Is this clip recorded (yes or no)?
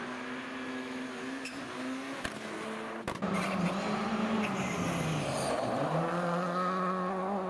yes